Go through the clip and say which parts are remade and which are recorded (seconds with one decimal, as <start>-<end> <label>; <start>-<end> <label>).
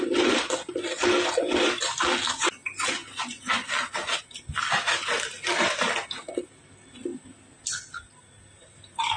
0.0-9.2 recorded